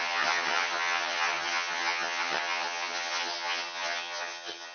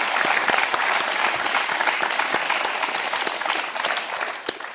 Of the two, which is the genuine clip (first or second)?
second